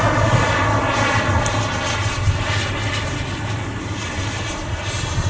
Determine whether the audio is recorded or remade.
recorded